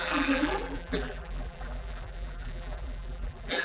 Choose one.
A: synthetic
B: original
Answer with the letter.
A